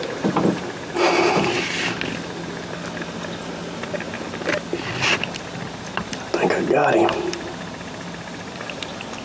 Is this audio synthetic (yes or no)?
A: no